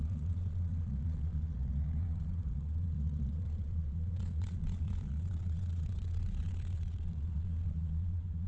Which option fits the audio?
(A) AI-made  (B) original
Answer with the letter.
A